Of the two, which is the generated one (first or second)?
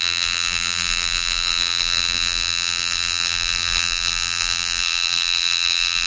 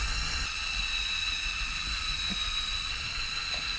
first